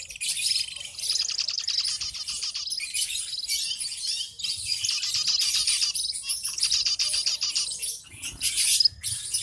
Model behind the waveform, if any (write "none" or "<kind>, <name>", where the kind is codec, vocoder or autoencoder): none